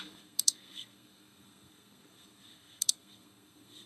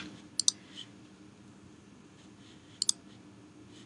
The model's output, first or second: first